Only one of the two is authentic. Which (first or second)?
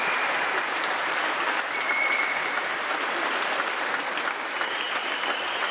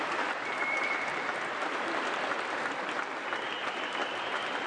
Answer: second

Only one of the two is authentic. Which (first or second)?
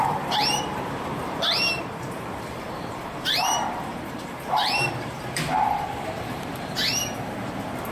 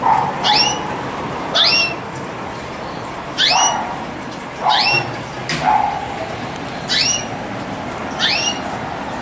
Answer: second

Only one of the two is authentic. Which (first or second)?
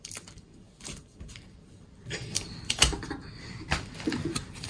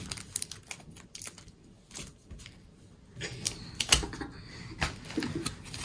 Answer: second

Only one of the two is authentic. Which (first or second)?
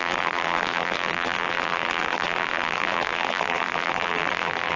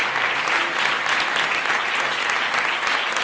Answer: second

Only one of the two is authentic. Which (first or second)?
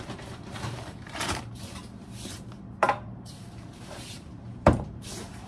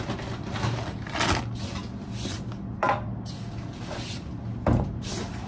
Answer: second